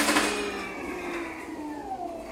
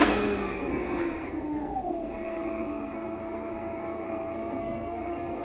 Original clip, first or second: first